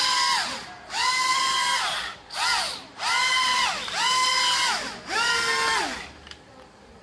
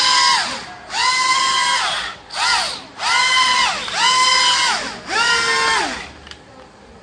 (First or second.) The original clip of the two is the second